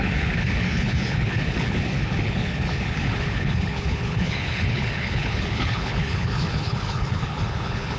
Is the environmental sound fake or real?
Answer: fake